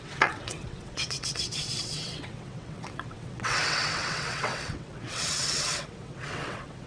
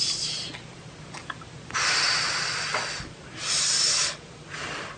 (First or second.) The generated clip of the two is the first